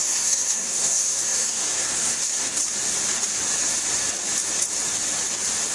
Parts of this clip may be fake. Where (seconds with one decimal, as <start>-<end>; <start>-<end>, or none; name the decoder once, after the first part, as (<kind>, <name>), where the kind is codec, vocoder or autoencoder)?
0.0-2.6 (codec, SNAC)